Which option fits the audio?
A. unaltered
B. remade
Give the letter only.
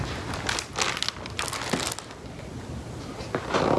A